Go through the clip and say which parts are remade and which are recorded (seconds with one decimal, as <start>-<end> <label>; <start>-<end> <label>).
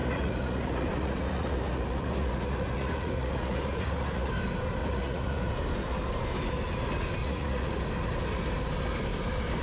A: 0.0-4.3 remade; 4.3-4.8 recorded; 4.8-5.5 remade; 5.5-7.2 recorded; 7.2-7.8 remade; 7.8-9.6 recorded